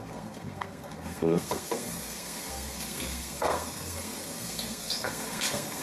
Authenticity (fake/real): fake